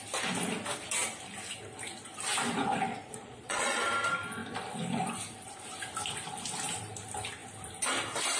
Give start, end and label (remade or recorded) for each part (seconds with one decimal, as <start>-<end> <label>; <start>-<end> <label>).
0.0-2.9 recorded; 2.9-3.8 remade; 3.8-8.4 recorded